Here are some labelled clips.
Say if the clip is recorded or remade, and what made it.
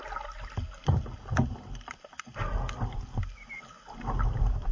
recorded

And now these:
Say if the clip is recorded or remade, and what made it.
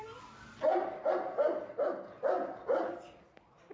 recorded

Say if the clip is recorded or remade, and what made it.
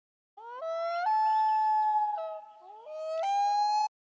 recorded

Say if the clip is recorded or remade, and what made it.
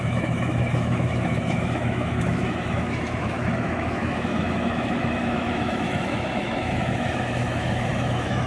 remade, autoencoder, DAC-VAE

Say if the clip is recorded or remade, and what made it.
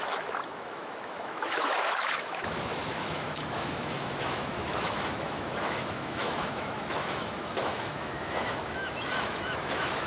remade, autoencoder, DAC-VAE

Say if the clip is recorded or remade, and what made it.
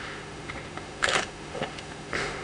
remade, autoencoder, DAC-VAE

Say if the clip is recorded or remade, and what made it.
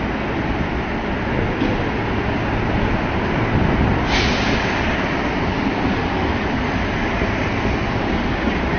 recorded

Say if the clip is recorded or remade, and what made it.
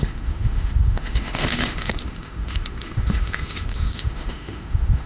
remade, autoencoder, DAC-VAE